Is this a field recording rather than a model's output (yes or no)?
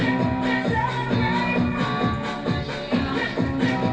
yes